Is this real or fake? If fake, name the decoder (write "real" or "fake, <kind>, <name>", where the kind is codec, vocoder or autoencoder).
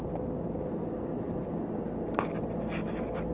real